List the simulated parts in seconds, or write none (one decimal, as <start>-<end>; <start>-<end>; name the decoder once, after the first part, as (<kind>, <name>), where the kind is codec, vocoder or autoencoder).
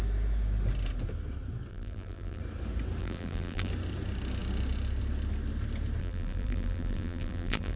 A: 1.7-2.4 (vocoder, BigVGAN v2); 3.0-3.7; 6.0-7.8